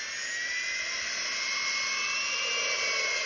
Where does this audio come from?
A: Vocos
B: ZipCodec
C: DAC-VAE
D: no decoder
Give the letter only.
D